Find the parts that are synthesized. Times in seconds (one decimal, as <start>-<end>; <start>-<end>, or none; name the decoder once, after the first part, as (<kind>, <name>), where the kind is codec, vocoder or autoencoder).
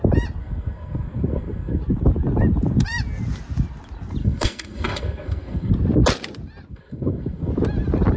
0.4-1.8 (codec, SNAC); 4.2-5.7; 6.7-7.5